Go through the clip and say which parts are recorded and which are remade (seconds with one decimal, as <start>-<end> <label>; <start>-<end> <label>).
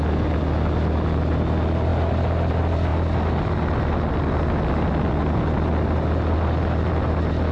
0.0-7.5 recorded